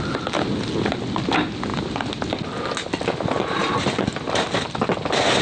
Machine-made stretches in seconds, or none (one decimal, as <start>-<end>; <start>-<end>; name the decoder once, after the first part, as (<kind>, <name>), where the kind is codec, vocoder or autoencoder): none